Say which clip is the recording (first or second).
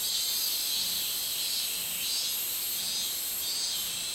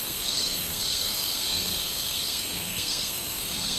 first